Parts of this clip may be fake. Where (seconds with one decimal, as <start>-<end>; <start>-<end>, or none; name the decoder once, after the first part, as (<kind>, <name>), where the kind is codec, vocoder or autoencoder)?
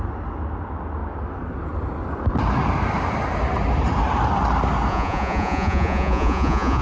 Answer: 4.9-6.8 (vocoder, Vocos)